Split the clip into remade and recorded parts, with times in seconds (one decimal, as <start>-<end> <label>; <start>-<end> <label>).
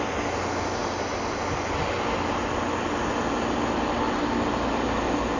0.0-5.4 recorded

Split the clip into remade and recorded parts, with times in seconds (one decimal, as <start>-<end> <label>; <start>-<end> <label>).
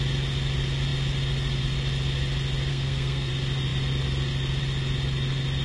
0.0-2.7 recorded; 2.7-3.3 remade; 3.3-5.6 recorded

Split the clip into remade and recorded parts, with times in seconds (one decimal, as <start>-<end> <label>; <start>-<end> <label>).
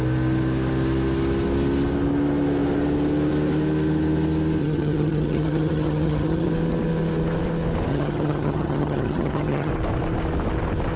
0.0-4.6 recorded; 4.6-6.5 remade; 6.5-7.9 recorded; 7.9-9.7 remade; 9.7-11.0 recorded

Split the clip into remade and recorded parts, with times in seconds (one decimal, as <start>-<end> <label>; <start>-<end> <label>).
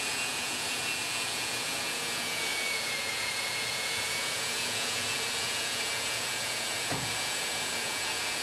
0.0-8.4 remade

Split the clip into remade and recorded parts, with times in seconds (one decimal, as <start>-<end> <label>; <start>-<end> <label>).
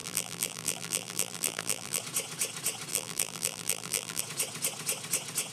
0.0-2.0 remade; 2.0-2.9 recorded; 2.9-4.2 remade; 4.2-5.5 recorded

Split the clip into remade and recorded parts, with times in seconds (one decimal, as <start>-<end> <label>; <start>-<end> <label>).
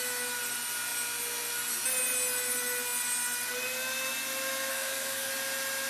0.0-4.7 recorded; 4.7-5.3 remade; 5.3-5.9 recorded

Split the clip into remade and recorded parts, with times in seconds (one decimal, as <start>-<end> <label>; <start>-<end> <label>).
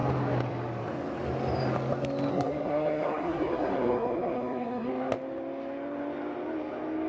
0.0-2.3 recorded; 2.3-4.9 remade; 4.9-7.1 recorded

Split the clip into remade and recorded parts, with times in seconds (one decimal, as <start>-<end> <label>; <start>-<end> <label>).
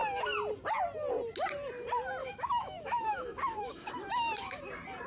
0.0-2.2 recorded; 2.2-4.6 remade; 4.6-5.1 recorded